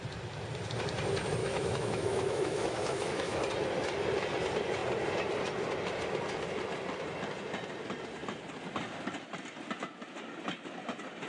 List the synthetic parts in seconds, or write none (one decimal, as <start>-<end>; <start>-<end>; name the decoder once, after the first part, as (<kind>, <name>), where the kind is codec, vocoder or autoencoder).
1.4-3.4 (autoencoder, DAC-VAE)

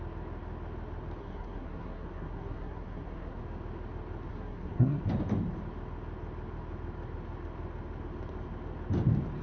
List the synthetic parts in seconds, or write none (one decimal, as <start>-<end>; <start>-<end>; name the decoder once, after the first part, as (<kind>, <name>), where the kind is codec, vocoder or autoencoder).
1.2-3.4 (codec, SNAC); 4.3-5.0

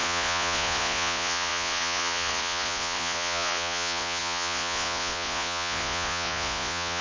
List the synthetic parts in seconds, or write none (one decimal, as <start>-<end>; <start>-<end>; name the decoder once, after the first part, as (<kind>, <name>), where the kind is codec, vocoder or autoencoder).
0.0-7.0 (vocoder, Vocos)

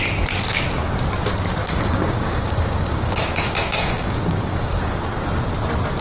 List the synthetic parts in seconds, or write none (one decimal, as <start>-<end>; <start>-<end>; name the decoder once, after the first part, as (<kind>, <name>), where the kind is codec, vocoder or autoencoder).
1.6-5.0 (codec, DAC)

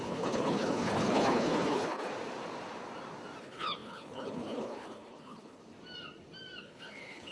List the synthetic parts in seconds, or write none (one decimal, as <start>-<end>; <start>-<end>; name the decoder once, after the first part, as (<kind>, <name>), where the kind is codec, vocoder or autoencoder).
0.0-2.1 (codec, HILCodec); 3.4-5.6; 6.6-7.3

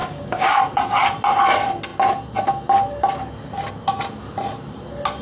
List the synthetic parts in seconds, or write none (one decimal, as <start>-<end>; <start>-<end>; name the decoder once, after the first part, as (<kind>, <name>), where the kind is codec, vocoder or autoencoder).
0.0-0.6 (codec, DAC)

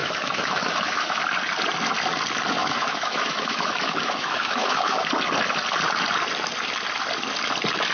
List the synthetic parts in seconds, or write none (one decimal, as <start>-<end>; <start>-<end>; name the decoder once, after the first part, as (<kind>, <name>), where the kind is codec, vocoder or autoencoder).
0.0-1.2 (autoencoder, DAC-VAE); 2.6-5.1

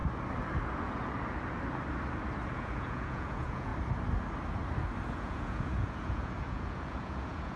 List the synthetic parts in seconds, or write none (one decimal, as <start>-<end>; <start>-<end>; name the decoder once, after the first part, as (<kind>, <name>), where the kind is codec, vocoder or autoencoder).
2.5-3.7 (vocoder, Vocos); 5.1-7.6